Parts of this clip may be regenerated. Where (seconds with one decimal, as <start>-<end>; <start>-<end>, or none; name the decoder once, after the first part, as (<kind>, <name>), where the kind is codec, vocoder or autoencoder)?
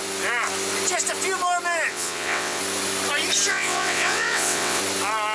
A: 1.9-2.6 (vocoder, WaveNeXt); 3.5-4.8